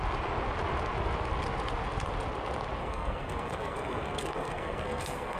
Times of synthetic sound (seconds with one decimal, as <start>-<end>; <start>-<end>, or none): 2.8-5.4